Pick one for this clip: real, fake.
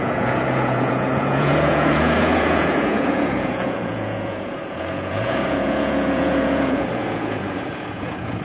fake